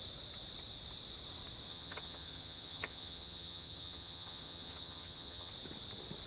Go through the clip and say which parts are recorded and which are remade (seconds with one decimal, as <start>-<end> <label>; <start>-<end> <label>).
0.0-1.7 recorded; 1.7-5.5 remade; 5.5-6.3 recorded